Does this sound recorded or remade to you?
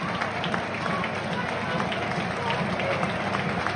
recorded